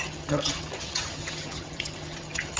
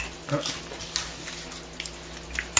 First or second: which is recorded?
second